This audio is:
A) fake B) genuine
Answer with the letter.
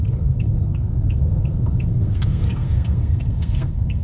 A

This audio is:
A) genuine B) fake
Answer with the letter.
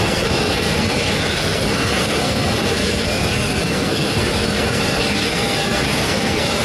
B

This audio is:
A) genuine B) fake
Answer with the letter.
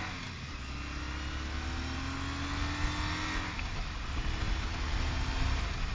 A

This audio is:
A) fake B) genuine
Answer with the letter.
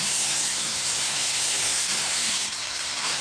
A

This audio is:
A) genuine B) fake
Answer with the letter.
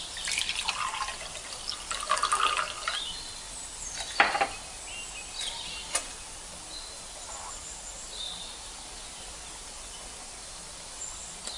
A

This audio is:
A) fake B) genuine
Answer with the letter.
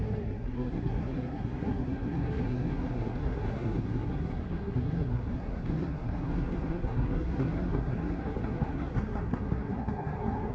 A